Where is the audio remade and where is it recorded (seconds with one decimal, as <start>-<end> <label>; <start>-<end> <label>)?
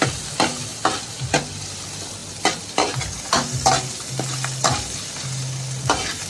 0.0-6.3 recorded